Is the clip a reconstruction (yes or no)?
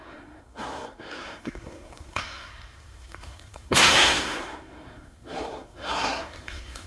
yes